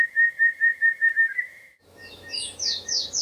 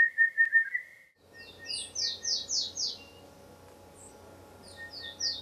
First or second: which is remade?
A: first